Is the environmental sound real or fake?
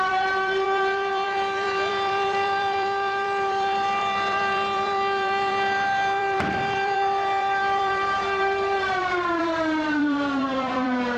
fake